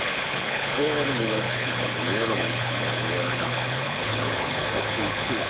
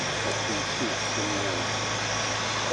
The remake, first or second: first